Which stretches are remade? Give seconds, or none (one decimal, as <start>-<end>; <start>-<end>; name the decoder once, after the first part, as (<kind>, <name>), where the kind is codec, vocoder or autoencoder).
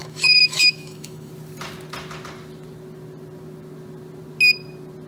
0.0-1.3 (autoencoder, DAC-VAE)